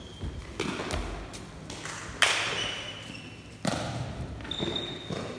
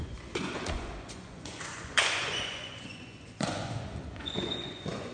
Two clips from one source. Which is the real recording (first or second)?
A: first